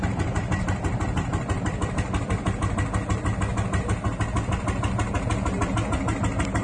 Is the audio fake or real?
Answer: real